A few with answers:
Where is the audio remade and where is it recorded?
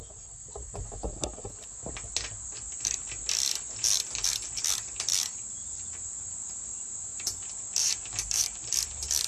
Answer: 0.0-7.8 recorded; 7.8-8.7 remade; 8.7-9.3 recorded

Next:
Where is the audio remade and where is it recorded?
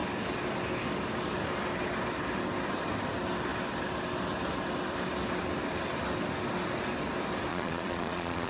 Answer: 0.0-7.5 recorded; 7.5-8.5 remade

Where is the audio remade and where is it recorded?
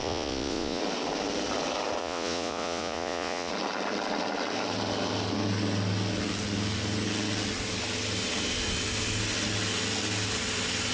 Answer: 0.0-0.8 remade; 0.8-2.0 recorded; 2.0-3.5 remade; 3.5-10.9 recorded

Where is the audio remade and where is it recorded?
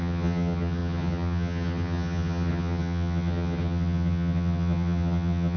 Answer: 0.0-5.6 remade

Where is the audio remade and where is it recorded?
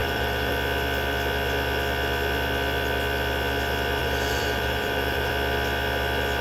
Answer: 0.0-0.5 remade; 0.5-4.0 recorded; 4.0-5.3 remade; 5.3-6.4 recorded